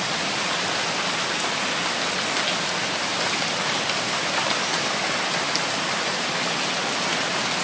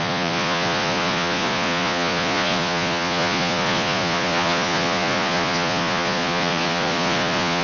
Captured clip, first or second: first